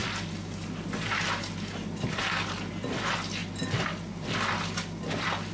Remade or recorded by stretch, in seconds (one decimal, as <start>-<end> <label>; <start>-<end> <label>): 0.0-5.5 recorded

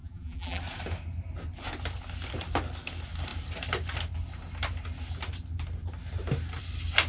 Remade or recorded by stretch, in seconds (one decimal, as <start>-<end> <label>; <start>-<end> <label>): 0.0-0.6 remade; 0.6-7.1 recorded

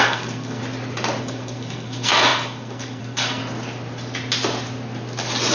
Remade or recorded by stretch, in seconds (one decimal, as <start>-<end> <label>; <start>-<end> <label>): 0.0-0.6 remade; 0.6-1.2 recorded; 1.2-3.4 remade; 3.4-5.5 recorded

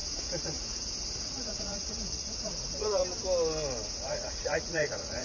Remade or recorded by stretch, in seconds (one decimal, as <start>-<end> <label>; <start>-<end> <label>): 0.0-3.0 remade; 3.0-3.9 recorded; 3.9-5.2 remade

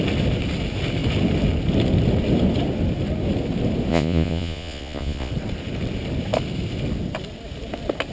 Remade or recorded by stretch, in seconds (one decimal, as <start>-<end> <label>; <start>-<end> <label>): 0.0-3.9 recorded; 3.9-5.3 remade; 5.3-8.1 recorded